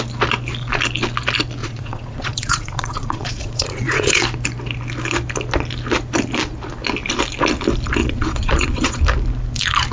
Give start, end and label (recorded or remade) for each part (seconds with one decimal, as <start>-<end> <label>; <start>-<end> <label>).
0.0-1.6 recorded; 1.6-4.2 remade; 4.2-8.0 recorded; 8.0-9.0 remade; 9.0-9.9 recorded